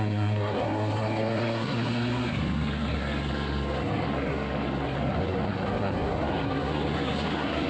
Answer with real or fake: fake